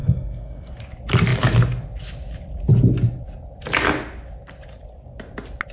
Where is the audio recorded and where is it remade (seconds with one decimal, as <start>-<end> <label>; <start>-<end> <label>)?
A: 0.0-0.7 remade; 0.7-5.7 recorded